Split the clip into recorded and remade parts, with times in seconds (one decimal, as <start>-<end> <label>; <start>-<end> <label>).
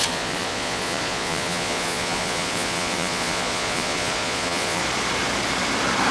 0.0-4.8 remade; 4.8-6.1 recorded